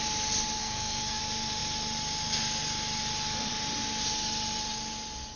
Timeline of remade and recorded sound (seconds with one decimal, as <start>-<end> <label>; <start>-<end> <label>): 0.0-0.6 recorded; 0.6-1.2 remade; 1.2-5.4 recorded